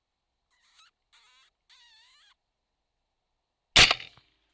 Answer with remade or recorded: recorded